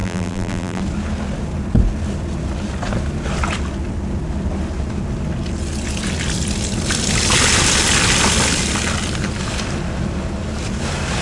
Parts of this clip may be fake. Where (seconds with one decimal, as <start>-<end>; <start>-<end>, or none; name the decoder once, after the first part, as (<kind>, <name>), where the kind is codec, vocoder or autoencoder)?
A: 0.0-0.8 (vocoder, BigVGAN v2)